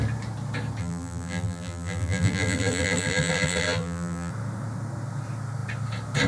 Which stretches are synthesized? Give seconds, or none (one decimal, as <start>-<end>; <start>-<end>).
0.8-4.3